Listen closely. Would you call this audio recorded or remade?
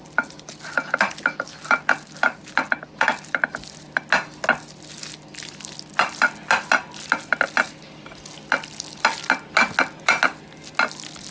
recorded